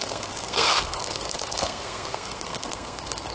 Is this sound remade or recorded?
remade